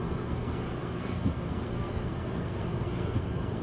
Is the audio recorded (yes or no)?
no